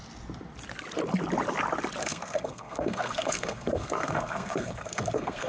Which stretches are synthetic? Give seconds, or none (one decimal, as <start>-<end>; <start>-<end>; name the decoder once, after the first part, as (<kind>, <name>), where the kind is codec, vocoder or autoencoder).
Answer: 2.0-5.5 (codec, SNAC)